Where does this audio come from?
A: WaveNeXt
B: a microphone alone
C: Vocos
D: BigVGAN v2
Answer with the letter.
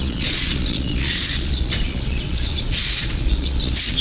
C